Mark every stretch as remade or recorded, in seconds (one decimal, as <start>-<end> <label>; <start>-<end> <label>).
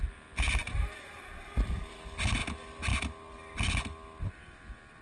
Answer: 0.0-0.6 recorded; 0.6-1.9 remade; 1.9-5.0 recorded